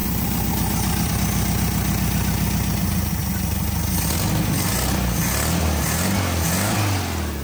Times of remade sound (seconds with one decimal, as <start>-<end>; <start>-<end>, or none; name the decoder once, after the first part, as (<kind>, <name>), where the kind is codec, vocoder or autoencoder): 0.0-1.1 (vocoder, BigVGAN v2)